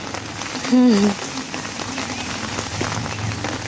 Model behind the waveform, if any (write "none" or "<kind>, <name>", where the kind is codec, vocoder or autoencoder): none